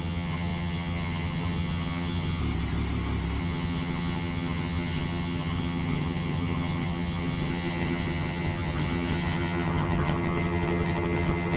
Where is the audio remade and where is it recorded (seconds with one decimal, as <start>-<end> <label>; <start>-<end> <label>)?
0.0-2.4 remade; 2.4-3.4 recorded; 3.4-11.6 remade